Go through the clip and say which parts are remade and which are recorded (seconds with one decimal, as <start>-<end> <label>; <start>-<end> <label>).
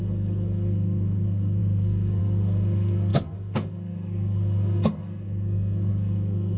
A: 0.0-6.6 remade